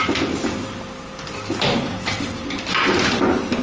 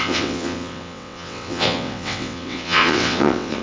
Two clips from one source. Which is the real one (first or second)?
first